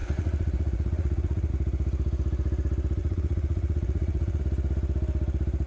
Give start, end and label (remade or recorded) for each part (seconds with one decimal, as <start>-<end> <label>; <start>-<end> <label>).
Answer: 0.0-1.5 remade; 1.5-3.0 recorded; 3.0-4.4 remade; 4.4-5.7 recorded